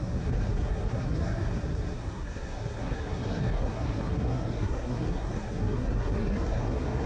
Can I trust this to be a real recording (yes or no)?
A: no